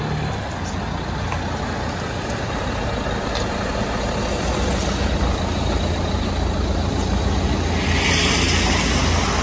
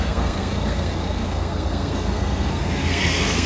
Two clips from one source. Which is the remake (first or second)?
second